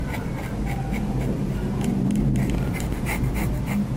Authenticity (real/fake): real